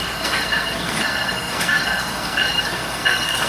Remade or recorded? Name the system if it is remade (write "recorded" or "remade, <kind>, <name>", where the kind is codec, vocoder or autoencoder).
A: remade, codec, SNAC